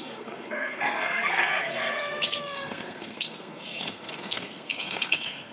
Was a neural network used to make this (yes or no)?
yes